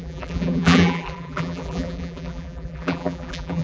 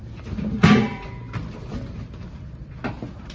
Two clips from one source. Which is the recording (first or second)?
second